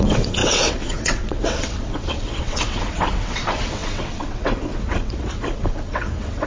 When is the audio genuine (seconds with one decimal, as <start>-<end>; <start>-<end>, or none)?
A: none